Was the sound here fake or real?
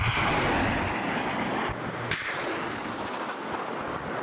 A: real